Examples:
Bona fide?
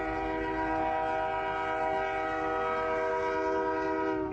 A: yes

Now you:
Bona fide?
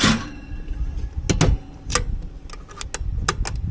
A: yes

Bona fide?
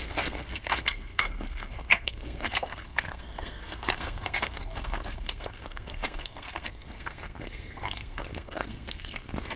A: no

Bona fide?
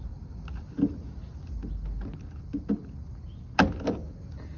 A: yes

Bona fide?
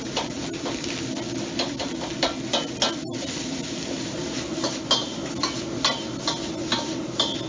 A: yes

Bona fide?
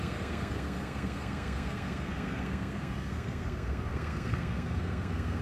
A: no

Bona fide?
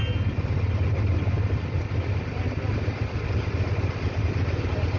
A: yes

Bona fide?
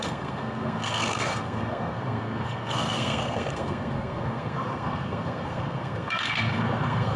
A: no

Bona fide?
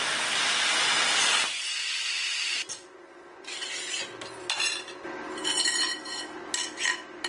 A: yes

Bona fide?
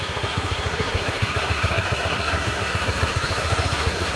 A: no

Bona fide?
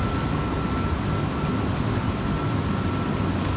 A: yes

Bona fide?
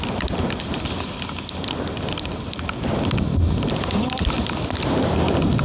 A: yes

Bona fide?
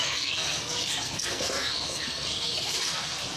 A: no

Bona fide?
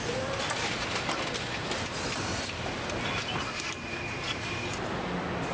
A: yes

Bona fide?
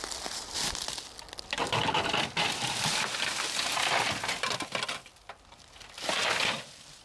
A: yes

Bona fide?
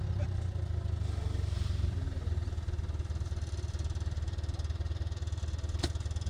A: yes